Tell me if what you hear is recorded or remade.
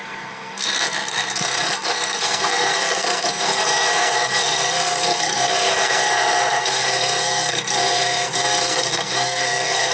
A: remade